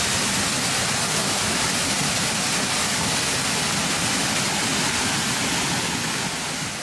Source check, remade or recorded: recorded